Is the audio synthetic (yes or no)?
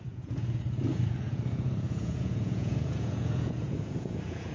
yes